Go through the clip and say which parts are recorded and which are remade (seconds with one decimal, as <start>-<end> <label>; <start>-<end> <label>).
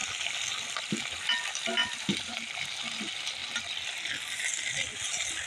0.0-1.8 recorded; 1.8-2.6 remade; 2.6-5.5 recorded